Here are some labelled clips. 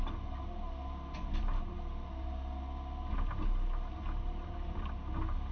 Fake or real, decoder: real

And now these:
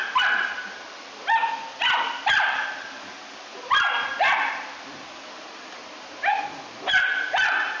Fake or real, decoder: real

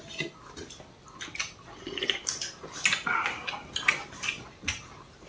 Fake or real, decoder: real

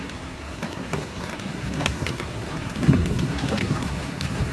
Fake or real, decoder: fake, codec, SNAC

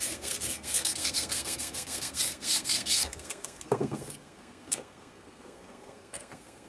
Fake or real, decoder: fake, codec, SNAC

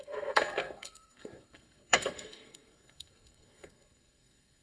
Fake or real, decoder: fake, codec, SNAC